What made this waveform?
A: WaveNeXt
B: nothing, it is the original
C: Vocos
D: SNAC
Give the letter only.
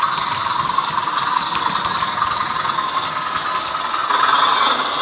B